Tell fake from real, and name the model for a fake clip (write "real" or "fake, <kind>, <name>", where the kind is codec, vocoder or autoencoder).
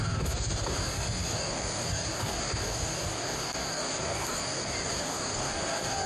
fake, codec, DAC